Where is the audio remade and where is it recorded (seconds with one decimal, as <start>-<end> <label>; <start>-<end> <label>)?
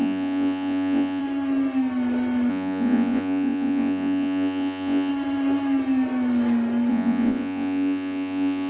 0.0-1.2 remade; 1.2-2.5 recorded; 2.5-5.1 remade; 5.1-6.9 recorded; 6.9-8.7 remade